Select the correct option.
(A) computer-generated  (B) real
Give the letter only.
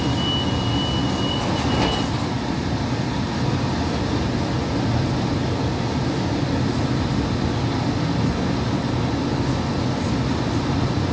B